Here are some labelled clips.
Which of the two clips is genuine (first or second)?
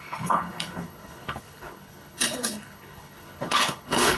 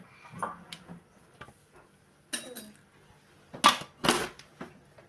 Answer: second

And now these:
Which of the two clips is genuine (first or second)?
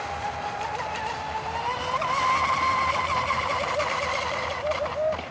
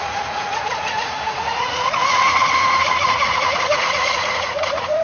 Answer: first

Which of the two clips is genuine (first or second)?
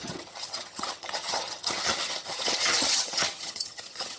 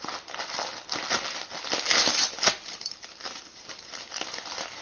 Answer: second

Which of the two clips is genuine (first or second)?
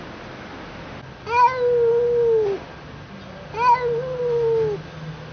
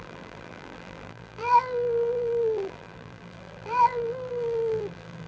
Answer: first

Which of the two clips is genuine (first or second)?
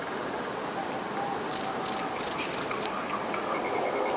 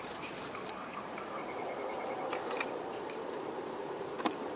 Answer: first